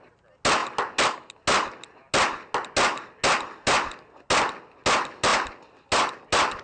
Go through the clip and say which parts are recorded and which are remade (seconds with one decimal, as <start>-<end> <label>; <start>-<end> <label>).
0.0-6.6 recorded